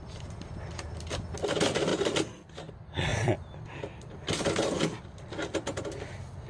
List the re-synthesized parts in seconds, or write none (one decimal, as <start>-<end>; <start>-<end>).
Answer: none